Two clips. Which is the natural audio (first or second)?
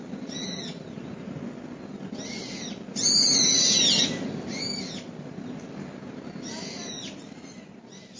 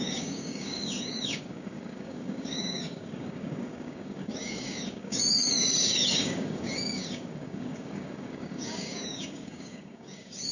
first